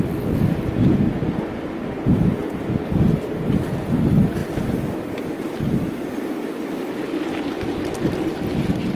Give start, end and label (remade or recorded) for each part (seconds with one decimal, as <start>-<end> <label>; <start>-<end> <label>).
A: 0.0-8.9 recorded